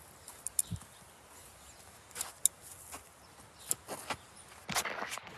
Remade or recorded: recorded